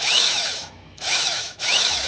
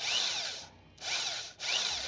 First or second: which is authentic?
second